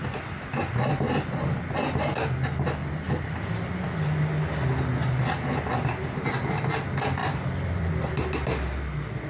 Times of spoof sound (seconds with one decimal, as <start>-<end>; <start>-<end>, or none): 2.8-3.9; 7.2-7.9